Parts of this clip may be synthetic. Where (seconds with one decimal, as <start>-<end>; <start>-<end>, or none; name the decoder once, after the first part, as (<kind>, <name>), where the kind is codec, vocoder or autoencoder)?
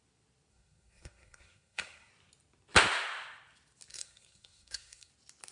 0.5-2.1 (codec, SNAC); 3.9-5.1